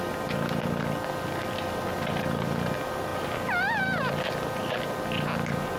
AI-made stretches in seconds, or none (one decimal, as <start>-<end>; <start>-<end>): none